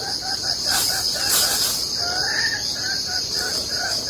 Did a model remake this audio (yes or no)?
no